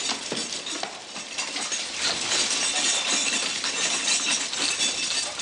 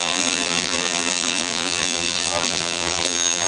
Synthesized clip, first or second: second